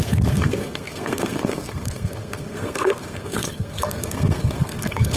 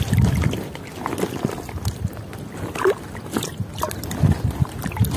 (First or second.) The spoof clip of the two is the first